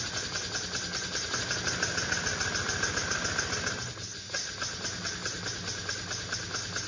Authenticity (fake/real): real